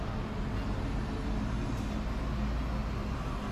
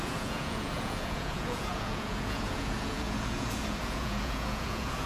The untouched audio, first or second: first